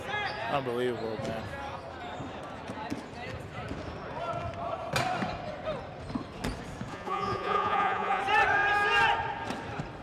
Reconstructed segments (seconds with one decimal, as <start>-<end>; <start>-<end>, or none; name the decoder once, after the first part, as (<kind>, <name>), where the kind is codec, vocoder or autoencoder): 6.9-8.2 (vocoder, Vocos)